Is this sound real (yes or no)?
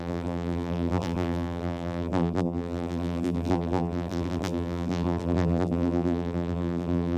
no